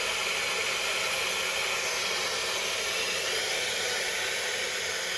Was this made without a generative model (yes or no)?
yes